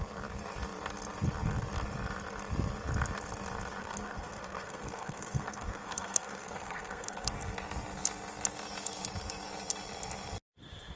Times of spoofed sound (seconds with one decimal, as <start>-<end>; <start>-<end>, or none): 3.8-7.3